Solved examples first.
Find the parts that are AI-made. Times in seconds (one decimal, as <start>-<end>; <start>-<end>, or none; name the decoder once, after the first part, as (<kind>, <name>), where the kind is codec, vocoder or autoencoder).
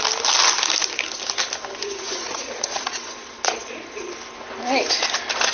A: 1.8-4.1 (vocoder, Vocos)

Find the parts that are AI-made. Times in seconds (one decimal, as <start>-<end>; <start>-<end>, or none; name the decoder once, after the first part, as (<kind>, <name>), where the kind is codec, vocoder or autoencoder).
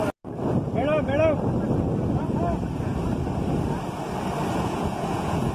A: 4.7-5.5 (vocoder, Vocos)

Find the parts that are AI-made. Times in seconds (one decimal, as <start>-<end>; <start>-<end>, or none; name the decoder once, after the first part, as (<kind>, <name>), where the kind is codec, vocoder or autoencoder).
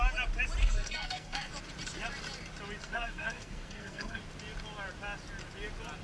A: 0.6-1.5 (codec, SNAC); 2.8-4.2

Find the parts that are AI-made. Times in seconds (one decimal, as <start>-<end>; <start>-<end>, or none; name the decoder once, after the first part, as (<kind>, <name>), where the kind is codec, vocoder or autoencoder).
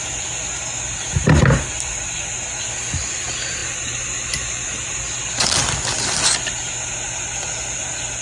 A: none